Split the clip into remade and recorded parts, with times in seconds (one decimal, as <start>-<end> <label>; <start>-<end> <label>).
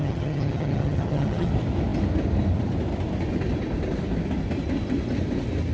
0.0-1.5 remade; 1.5-5.7 recorded